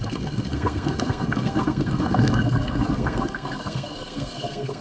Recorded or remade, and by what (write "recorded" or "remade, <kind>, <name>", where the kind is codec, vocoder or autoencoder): remade, codec, SNAC